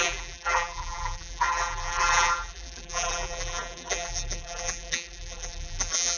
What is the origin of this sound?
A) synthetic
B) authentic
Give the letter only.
A